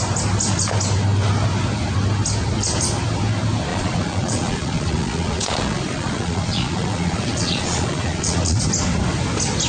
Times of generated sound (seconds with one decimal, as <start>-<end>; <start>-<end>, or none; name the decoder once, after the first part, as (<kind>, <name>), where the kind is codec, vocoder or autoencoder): 3.7-8.6 (vocoder, Vocos)